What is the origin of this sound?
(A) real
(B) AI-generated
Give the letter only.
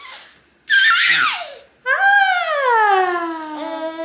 A